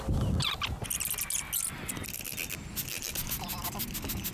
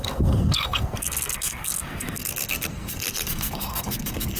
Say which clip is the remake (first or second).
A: second